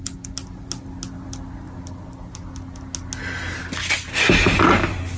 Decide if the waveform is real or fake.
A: real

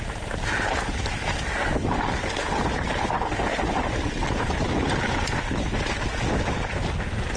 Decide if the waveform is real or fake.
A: real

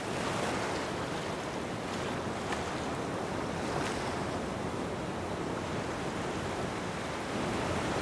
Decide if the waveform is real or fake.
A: real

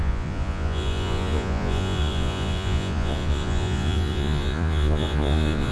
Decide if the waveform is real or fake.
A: fake